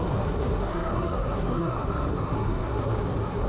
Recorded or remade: remade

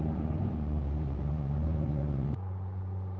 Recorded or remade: remade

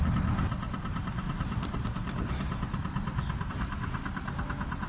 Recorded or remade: recorded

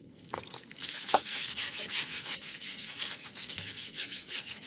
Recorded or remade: remade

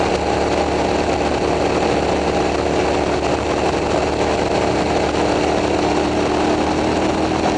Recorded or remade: recorded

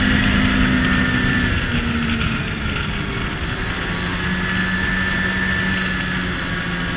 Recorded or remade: recorded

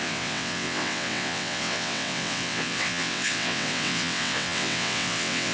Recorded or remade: remade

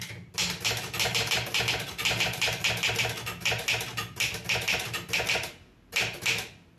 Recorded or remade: recorded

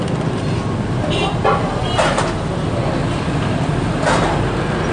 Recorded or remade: recorded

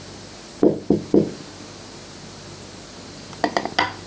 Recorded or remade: recorded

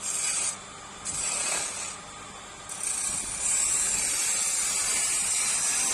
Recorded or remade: recorded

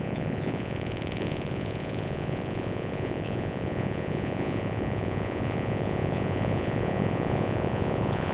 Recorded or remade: remade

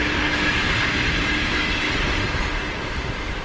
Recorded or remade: recorded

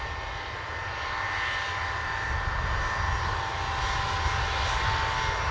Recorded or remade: recorded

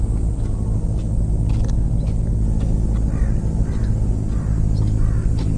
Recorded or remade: recorded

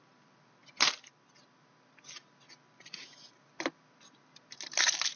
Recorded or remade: recorded